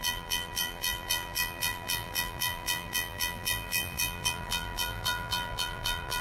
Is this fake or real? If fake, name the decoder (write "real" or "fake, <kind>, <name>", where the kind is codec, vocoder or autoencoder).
fake, vocoder, BigVGAN v2